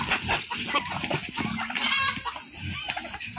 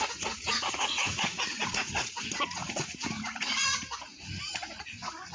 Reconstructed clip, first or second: second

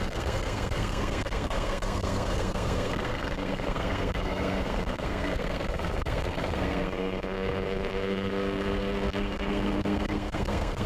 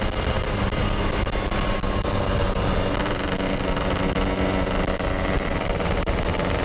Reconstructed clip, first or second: first